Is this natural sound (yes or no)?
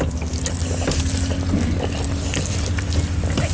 yes